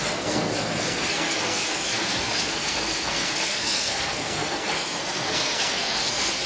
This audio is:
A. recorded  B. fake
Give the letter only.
B